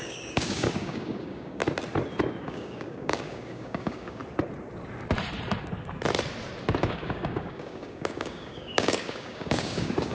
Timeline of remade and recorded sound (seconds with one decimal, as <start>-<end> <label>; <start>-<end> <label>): 0.0-1.6 remade; 1.6-2.4 recorded; 2.4-4.2 remade; 4.2-6.8 recorded; 6.8-10.1 remade